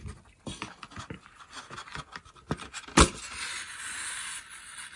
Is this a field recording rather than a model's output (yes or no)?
yes